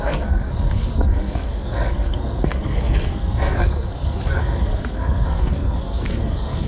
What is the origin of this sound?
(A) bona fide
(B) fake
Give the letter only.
B